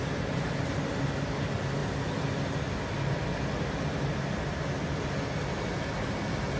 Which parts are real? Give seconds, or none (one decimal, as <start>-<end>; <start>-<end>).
1.0-6.6